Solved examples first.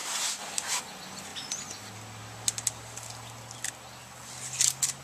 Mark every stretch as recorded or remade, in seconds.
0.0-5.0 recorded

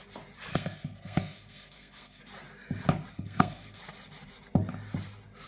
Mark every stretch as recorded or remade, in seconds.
0.0-0.5 recorded; 0.5-2.2 remade; 2.2-3.1 recorded; 3.1-3.8 remade; 3.8-5.5 recorded

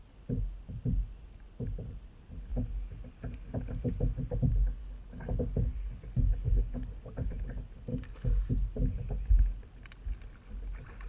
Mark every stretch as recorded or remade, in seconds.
0.0-4.8 recorded; 4.8-7.0 remade; 7.0-7.9 recorded; 7.9-8.5 remade; 8.5-11.1 recorded

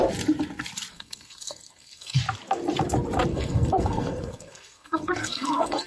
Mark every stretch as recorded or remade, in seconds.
0.0-0.9 recorded; 0.9-2.2 remade; 2.2-3.3 recorded; 3.3-5.9 remade